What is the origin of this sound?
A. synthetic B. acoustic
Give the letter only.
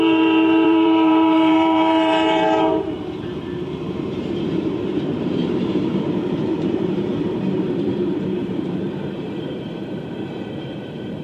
A